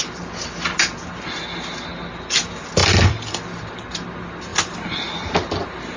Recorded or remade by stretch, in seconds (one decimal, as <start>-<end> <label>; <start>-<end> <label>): 0.0-6.0 recorded